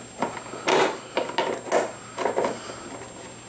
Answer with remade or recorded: recorded